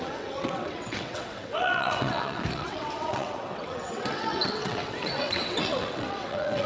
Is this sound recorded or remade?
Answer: remade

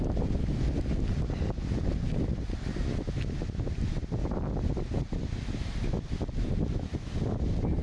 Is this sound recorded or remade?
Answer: recorded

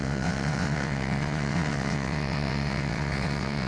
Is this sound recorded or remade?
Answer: remade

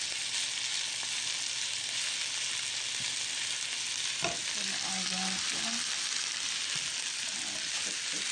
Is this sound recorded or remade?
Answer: recorded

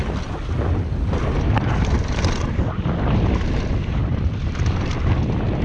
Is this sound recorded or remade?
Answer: recorded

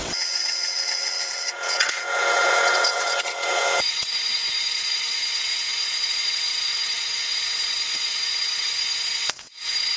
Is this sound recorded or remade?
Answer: remade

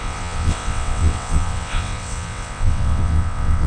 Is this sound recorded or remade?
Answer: remade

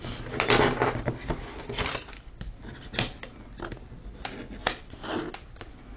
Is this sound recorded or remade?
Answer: recorded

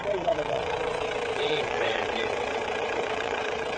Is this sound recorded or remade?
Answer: remade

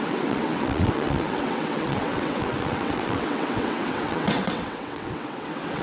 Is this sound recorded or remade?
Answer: remade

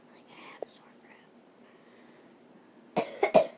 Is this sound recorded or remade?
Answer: recorded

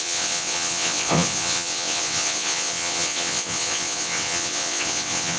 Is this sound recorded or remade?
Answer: remade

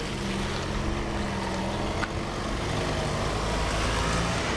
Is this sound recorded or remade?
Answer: recorded